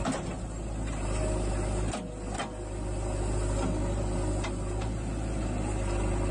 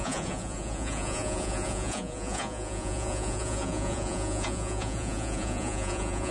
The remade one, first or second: second